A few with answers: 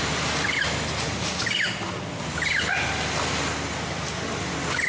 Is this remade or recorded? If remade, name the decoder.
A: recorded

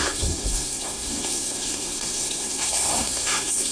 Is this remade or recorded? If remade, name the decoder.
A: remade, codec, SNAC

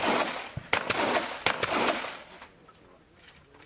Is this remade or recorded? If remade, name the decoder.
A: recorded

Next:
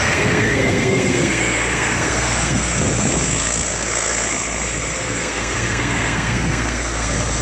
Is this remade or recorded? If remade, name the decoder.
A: remade, codec, SNAC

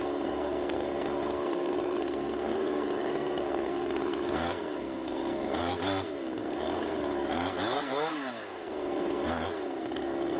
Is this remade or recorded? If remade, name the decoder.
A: remade, codec, SNAC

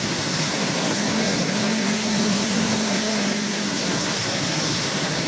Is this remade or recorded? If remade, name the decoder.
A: remade, codec, SNAC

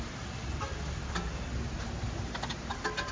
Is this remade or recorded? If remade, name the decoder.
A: recorded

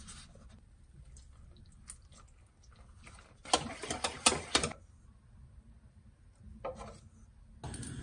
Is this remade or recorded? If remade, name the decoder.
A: recorded